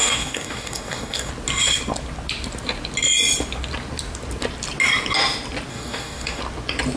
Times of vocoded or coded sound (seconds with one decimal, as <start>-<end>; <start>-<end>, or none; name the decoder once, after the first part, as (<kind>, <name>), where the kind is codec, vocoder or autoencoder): 0.0-1.3 (codec, DAC); 5.7-6.4